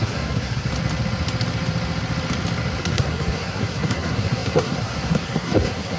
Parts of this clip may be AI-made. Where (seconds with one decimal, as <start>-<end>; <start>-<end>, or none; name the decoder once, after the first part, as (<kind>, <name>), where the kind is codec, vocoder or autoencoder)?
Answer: 0.0-0.7 (codec, SNAC); 2.8-6.0